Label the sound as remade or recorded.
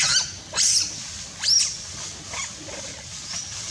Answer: recorded